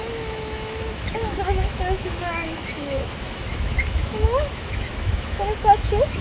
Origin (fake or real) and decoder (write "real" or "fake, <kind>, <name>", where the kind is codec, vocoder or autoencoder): fake, autoencoder, DAC-VAE